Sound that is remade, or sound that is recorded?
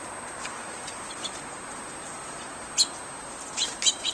recorded